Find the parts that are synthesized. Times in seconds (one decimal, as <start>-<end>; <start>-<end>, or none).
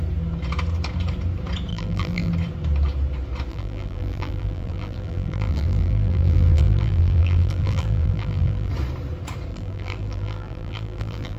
1.7-2.3; 3.5-8.7; 9.5-11.4